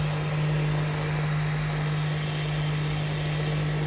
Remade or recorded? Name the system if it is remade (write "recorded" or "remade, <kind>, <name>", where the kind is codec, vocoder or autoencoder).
recorded